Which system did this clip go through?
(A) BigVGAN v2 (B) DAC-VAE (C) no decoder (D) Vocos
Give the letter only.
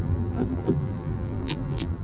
A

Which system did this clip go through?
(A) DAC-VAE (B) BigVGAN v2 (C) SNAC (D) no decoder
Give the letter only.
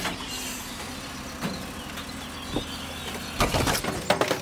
D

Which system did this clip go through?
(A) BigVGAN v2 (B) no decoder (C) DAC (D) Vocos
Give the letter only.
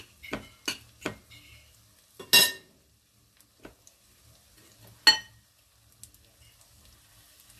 B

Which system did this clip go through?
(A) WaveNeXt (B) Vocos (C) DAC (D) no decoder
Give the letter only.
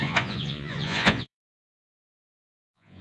B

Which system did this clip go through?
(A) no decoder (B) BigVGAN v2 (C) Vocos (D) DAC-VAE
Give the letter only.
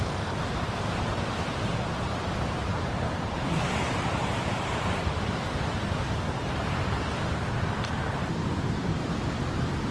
B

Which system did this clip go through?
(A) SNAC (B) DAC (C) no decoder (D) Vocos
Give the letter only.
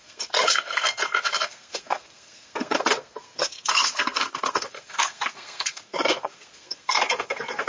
A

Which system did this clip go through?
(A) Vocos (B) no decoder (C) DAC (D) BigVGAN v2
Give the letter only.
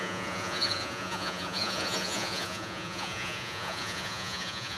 A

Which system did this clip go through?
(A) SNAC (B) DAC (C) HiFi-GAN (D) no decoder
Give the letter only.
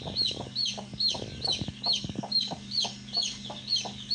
B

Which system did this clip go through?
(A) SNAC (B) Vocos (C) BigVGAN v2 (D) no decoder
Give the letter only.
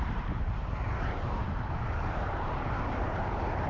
C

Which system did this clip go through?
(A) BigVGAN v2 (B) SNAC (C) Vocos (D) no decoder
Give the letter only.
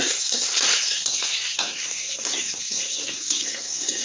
B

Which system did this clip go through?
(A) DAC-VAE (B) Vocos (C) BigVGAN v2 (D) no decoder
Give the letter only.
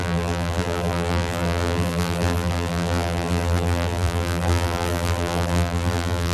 C